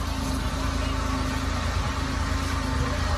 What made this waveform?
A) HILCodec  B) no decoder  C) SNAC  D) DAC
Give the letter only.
B